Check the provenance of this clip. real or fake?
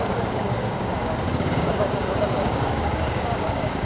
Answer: fake